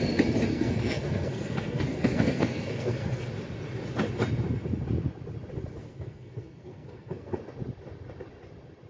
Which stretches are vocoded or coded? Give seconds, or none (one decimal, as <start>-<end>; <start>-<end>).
0.5-3.3; 5.8-7.4